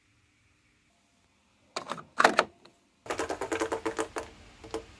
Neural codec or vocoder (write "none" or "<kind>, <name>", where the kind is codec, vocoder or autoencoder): none